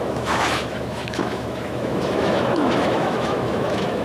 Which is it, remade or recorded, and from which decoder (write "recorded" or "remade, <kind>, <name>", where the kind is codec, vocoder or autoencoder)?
remade, autoencoder, DAC-VAE